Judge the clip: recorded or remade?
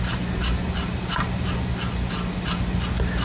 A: recorded